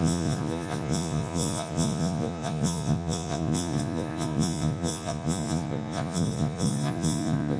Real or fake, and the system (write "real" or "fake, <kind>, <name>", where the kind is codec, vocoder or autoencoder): fake, vocoder, Vocos